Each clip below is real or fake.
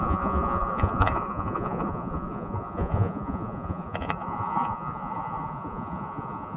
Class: fake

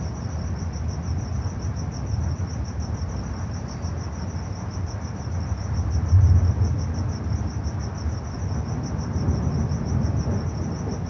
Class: real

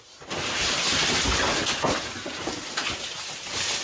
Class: real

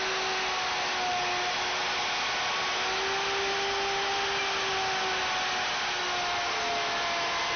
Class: real